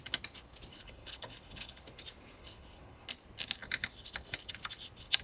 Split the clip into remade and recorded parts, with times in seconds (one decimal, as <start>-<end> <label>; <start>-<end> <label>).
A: 0.0-0.7 recorded; 0.7-1.8 remade; 1.8-2.4 recorded; 2.4-3.1 remade; 3.1-5.2 recorded

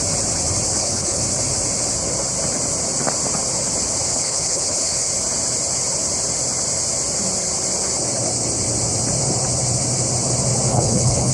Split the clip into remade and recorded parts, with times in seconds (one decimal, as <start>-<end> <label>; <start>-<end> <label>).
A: 0.0-0.7 recorded; 0.7-1.2 remade; 1.2-4.1 recorded; 4.1-5.1 remade; 5.1-10.7 recorded; 10.7-11.3 remade